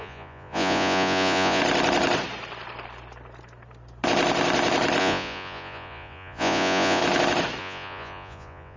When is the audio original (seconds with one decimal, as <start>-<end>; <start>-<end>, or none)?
1.6-5.0; 7.0-7.6